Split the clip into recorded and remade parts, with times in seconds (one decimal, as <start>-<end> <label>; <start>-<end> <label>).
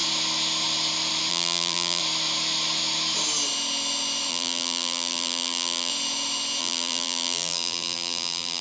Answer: 0.0-1.3 recorded; 1.3-2.0 remade; 2.0-4.3 recorded; 4.3-5.9 remade; 5.9-6.6 recorded; 6.6-8.6 remade